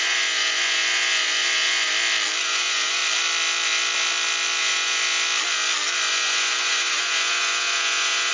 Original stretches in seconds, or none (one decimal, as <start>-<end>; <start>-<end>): 1.9-2.4; 3.0-4.6; 5.0-6.1